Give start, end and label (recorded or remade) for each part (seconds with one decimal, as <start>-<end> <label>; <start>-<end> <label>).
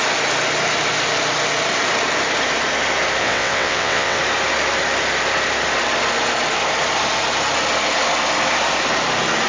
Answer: 0.0-3.2 recorded; 3.2-4.2 remade; 4.2-9.5 recorded